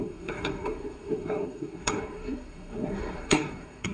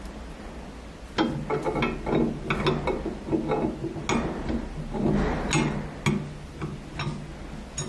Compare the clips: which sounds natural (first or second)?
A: second